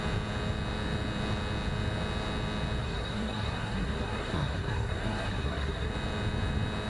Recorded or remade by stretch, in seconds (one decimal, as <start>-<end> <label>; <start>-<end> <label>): 0.0-2.8 recorded; 2.8-5.9 remade; 5.9-6.9 recorded